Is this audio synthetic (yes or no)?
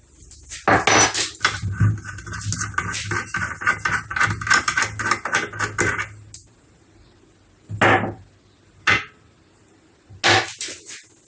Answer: no